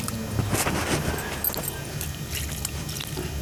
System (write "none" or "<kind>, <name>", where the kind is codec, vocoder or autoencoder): none